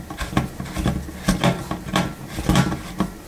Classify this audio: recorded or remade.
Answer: recorded